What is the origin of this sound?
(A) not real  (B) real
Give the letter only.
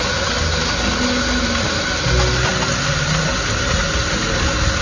B